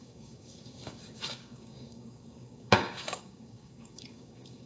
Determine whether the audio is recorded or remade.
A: remade